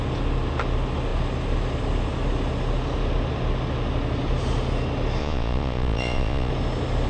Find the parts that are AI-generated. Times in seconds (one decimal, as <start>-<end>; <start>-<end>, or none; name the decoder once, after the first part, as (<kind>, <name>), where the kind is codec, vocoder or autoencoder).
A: 5.2-6.5 (vocoder, Vocos)